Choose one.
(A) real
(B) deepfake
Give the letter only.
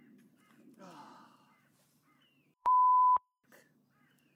B